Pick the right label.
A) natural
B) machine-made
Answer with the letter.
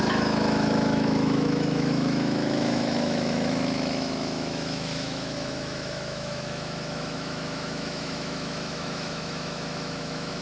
B